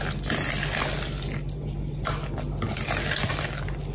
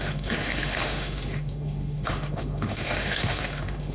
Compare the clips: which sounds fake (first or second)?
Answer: second